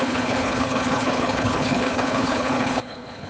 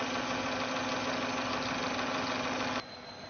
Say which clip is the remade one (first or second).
first